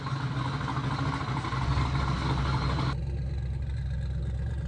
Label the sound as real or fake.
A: real